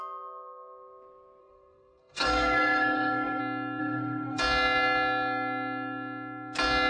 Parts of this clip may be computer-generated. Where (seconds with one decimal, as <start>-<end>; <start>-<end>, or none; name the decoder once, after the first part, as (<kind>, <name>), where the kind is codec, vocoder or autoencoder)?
1.4-3.4 (codec, SNAC); 3.8-4.4